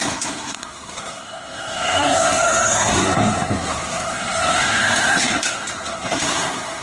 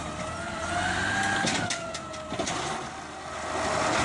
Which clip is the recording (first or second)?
second